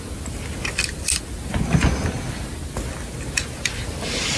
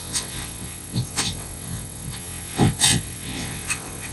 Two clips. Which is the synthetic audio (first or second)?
second